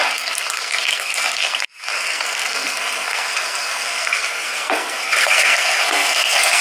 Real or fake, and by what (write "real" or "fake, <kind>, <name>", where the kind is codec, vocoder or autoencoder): fake, codec, SNAC